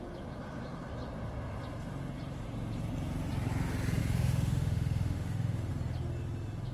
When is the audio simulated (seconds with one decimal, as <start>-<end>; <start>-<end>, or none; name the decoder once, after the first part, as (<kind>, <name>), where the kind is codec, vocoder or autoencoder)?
4.0-5.7 (autoencoder, DAC-VAE)